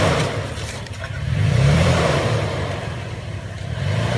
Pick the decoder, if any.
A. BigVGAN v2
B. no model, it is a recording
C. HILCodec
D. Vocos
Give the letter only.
A